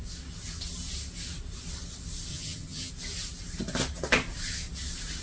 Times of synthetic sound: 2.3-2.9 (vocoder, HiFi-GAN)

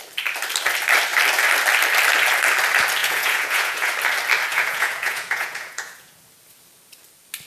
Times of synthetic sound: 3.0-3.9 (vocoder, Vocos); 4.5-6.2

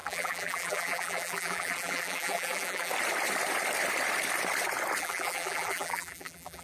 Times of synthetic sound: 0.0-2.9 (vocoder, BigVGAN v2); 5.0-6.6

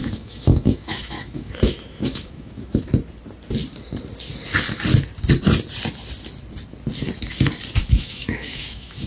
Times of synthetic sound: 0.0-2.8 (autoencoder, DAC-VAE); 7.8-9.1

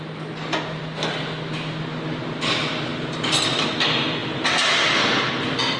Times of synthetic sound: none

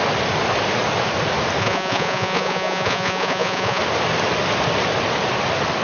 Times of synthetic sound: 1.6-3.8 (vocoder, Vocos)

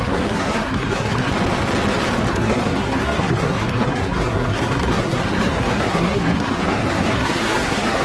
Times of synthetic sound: 0.0-1.3 (codec, SNAC); 2.3-8.0

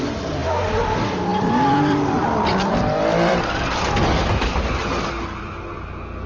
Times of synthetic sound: 1.3-5.1 (vocoder, BigVGAN v2)